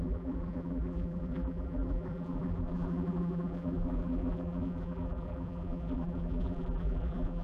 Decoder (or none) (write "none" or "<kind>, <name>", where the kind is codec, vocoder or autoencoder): vocoder, BigVGAN v2